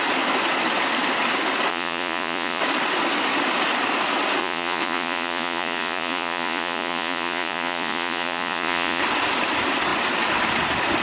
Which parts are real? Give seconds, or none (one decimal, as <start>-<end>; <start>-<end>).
0.0-1.7; 2.6-4.4; 9.0-11.0

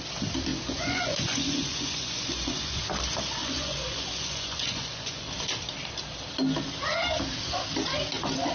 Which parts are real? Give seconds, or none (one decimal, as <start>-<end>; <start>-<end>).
0.0-0.5; 2.8-3.4; 5.3-8.5

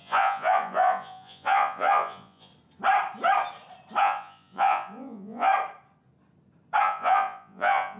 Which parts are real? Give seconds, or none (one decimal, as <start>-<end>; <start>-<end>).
2.5-4.0; 5.5-6.8

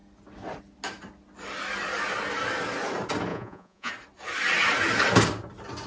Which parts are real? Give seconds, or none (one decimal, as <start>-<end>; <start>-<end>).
0.0-3.3; 3.9-5.9

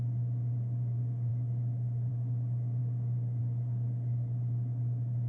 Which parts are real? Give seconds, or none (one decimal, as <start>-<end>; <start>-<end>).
0.0-5.3

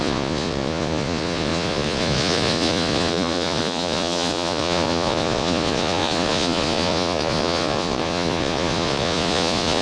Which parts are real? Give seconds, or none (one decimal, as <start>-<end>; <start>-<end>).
none